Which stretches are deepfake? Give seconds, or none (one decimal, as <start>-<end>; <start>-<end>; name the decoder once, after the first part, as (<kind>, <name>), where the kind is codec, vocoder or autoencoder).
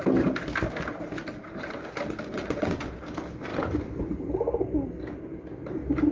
2.3-2.9 (vocoder, WaveNeXt)